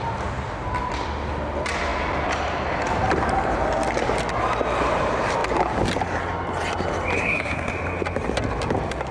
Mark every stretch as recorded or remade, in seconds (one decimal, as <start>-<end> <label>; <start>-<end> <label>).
0.0-7.2 recorded; 7.2-7.7 remade; 7.7-9.1 recorded